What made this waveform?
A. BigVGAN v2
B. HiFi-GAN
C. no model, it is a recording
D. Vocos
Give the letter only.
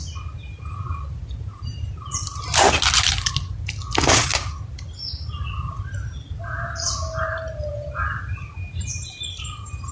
C